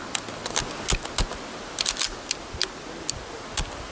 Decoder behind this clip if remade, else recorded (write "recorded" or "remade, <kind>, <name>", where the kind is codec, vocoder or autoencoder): recorded